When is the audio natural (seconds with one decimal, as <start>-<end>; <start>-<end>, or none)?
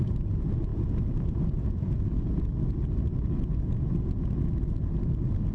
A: 0.0-0.7; 2.4-3.5; 4.2-5.5